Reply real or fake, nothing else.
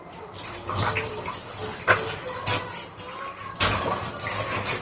real